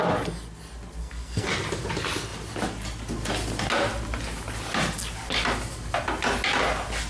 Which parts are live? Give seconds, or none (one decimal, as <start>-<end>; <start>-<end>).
0.0-1.0; 1.5-7.1